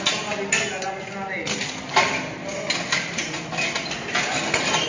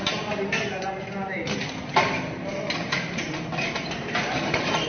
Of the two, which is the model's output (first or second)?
second